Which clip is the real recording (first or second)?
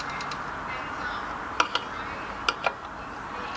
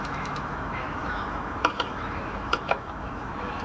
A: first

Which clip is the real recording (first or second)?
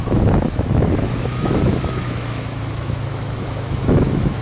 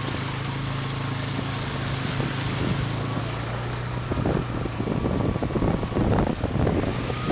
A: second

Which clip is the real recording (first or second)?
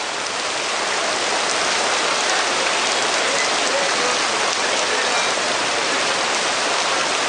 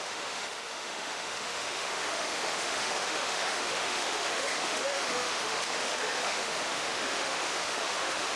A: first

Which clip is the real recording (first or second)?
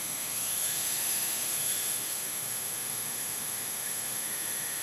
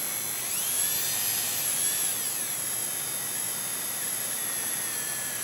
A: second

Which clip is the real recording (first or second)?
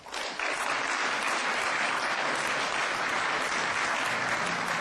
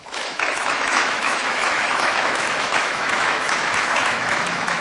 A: first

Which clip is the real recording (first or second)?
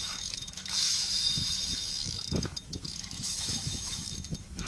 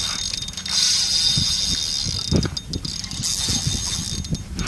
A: second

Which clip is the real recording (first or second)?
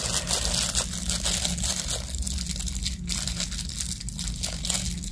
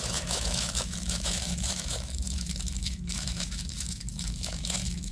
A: first